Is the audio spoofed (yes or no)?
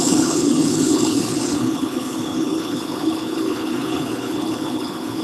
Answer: yes